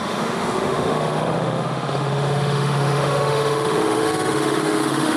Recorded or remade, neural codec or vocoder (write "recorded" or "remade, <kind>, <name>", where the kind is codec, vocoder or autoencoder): remade, autoencoder, DAC-VAE